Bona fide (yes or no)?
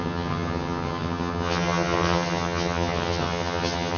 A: no